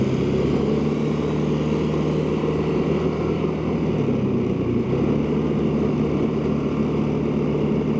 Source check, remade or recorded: recorded